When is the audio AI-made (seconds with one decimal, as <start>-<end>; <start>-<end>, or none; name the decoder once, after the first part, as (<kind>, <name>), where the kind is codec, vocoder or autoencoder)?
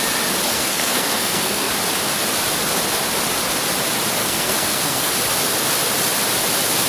0.5-1.7 (codec, SNAC); 4.2-5.1